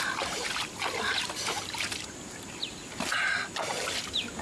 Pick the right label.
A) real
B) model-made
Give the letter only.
A